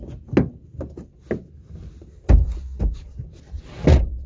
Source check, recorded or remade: recorded